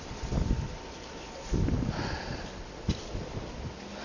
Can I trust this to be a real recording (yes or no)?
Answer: yes